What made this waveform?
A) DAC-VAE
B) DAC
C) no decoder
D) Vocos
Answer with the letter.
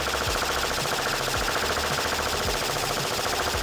C